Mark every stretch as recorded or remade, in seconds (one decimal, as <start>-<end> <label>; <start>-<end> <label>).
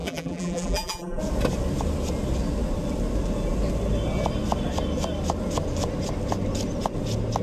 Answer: 0.0-1.2 remade; 1.2-7.4 recorded